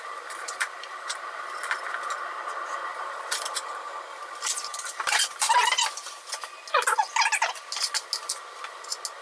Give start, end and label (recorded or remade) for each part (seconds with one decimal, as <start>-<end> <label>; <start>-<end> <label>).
0.0-2.9 recorded; 2.9-3.9 remade; 3.9-4.7 recorded; 4.7-6.2 remade; 6.2-9.2 recorded